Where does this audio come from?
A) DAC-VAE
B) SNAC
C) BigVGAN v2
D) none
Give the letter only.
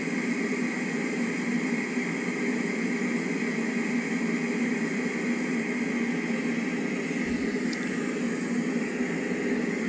D